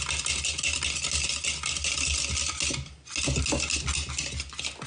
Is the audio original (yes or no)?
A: yes